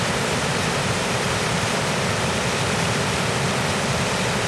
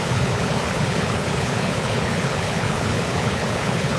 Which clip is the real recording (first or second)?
first